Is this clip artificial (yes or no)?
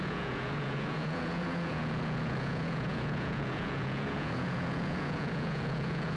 yes